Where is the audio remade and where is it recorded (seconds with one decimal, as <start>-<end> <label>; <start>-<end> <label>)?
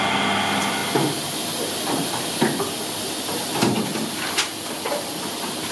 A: 0.0-5.7 recorded